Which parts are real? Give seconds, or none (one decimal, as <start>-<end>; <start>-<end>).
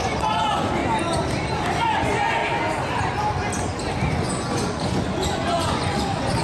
0.8-1.8; 2.4-4.2